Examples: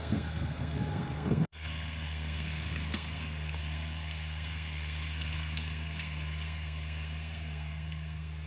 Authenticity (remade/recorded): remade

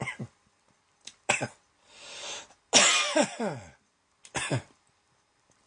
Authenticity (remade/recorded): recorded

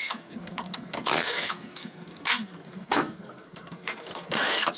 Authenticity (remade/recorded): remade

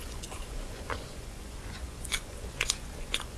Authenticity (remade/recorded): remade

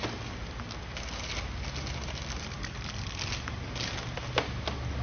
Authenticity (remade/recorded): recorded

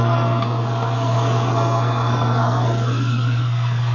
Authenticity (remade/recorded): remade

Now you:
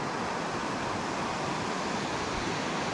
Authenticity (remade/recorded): recorded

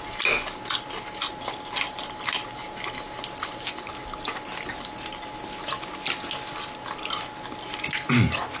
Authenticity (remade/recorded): recorded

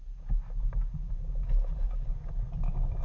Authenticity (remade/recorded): recorded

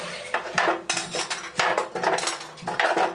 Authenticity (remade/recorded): recorded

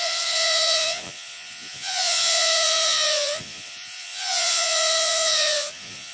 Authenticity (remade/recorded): remade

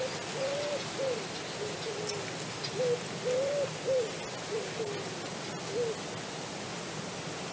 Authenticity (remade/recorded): recorded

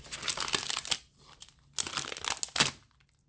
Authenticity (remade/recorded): recorded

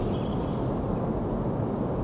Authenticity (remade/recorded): recorded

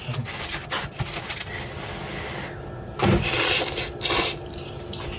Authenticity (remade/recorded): recorded